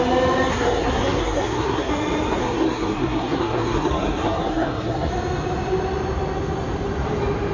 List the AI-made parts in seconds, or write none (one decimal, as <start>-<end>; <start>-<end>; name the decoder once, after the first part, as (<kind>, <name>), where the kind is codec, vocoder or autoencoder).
0.5-1.9 (codec, SNAC); 2.4-5.1